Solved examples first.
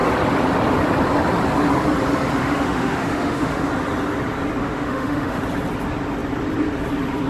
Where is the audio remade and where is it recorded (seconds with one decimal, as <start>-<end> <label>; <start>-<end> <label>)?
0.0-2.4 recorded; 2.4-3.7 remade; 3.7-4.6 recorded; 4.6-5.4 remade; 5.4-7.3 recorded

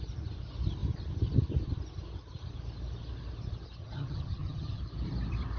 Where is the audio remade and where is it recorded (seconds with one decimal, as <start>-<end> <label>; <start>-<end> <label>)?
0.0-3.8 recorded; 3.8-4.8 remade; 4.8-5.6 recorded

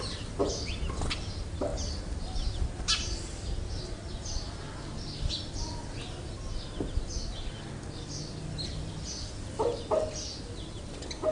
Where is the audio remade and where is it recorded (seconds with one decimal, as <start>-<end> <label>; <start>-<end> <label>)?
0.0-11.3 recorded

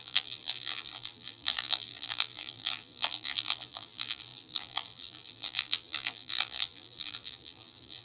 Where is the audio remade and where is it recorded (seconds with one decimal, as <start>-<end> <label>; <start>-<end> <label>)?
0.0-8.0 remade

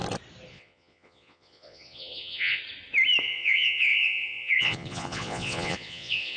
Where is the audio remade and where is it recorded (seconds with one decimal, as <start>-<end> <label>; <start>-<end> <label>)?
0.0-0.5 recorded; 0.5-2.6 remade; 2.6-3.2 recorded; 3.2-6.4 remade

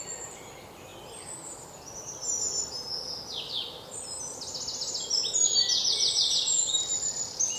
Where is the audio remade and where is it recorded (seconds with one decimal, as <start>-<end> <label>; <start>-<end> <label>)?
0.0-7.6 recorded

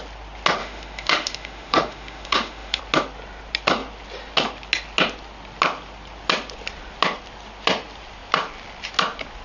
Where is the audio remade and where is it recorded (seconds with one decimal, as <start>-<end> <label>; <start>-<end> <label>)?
0.0-0.6 recorded; 0.6-2.8 remade; 2.8-9.4 recorded